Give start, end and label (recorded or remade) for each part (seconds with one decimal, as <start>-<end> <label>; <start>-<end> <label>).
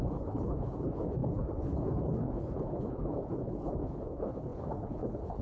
0.0-5.4 remade